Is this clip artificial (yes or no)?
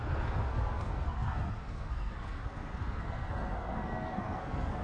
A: yes